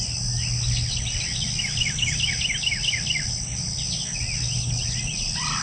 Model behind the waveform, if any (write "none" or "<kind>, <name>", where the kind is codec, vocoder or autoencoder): none